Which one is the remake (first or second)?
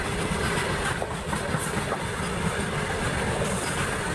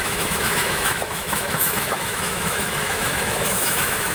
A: second